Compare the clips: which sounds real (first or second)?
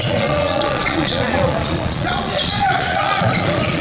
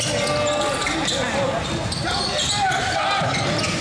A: second